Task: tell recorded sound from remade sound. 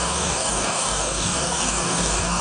remade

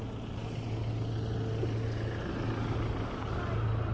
recorded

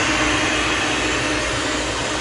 recorded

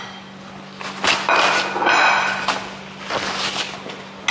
recorded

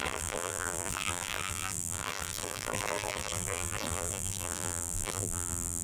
remade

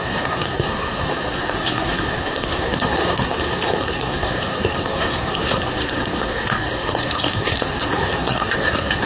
remade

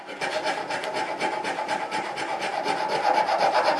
recorded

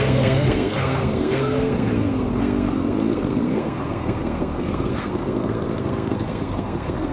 remade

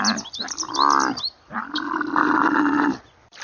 remade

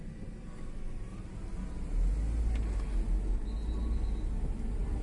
recorded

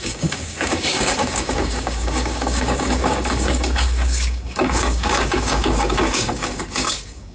remade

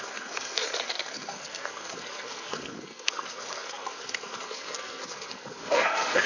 remade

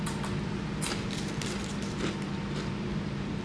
recorded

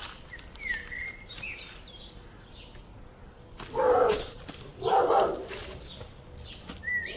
recorded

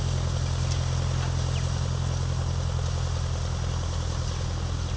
recorded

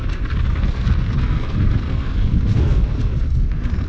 remade